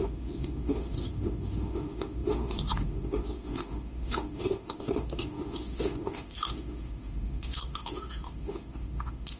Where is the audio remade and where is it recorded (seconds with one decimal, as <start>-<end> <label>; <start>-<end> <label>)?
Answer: 0.0-9.4 remade